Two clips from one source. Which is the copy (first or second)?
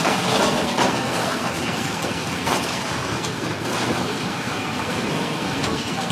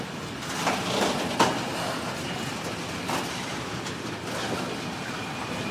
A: first